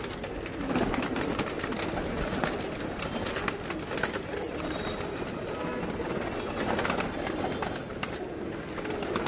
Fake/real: real